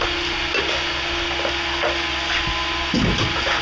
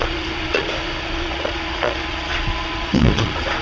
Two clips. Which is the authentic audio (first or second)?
first